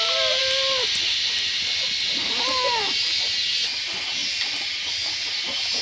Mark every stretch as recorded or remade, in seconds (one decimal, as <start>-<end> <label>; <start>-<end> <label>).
0.0-5.8 recorded